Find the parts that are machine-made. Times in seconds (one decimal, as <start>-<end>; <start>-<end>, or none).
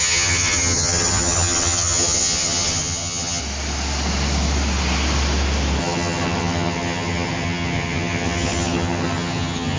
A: 0.0-3.4; 5.8-9.8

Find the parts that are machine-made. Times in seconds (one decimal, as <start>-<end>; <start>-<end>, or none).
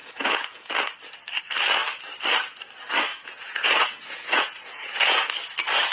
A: 0.0-0.7; 3.1-5.3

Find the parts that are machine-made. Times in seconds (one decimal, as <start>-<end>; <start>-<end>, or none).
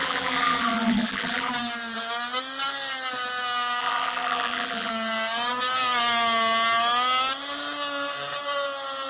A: 0.0-1.5; 3.8-4.9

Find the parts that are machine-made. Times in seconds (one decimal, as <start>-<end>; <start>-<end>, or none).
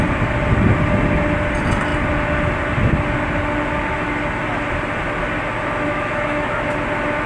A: 5.9-6.7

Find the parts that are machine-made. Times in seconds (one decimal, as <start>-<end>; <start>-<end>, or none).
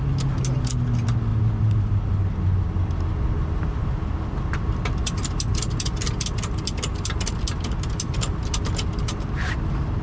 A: none